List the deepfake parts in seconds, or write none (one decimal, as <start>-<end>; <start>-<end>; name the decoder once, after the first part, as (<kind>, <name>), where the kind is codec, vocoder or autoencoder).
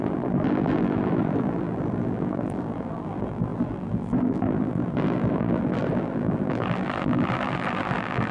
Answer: 0.0-8.3 (vocoder, BigVGAN v2)